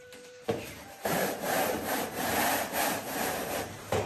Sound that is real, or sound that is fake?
fake